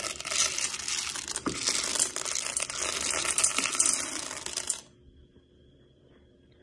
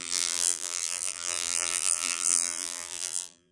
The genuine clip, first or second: first